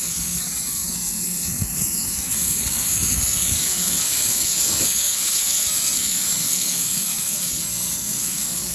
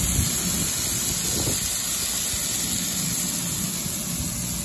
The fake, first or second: first